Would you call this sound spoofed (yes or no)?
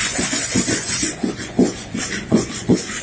yes